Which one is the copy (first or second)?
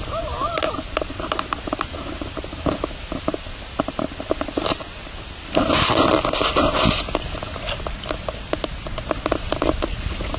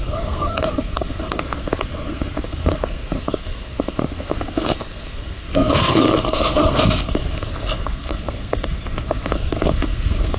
second